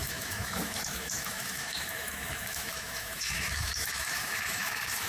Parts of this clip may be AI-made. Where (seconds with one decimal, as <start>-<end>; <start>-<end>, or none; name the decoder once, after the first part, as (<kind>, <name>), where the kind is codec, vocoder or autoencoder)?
0.0-5.1 (autoencoder, DAC-VAE)